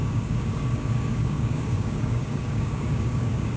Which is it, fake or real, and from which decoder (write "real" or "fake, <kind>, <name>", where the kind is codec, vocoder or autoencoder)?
fake, codec, DAC